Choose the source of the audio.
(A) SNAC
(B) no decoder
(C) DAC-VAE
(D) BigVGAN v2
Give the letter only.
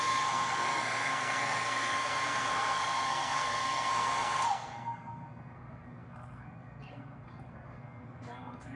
A